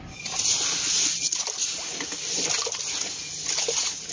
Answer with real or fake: real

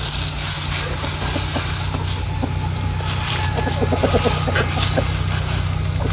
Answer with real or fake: real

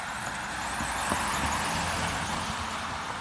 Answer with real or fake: real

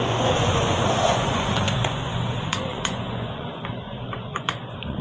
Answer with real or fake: fake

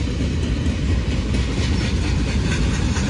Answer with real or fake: real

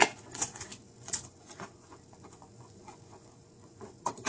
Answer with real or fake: fake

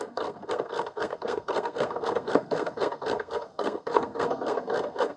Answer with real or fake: fake